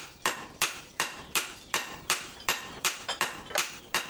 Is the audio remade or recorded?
remade